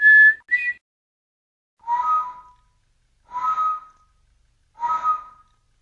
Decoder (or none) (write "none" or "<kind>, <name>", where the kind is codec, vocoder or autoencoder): none